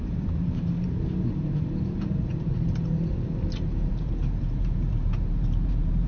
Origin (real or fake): fake